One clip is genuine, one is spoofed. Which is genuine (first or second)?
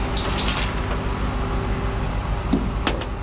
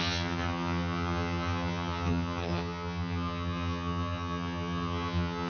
first